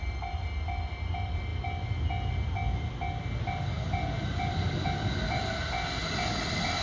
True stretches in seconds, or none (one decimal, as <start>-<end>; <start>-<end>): 0.0-6.8